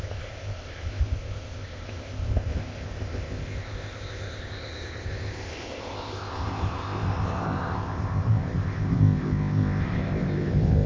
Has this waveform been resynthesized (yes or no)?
yes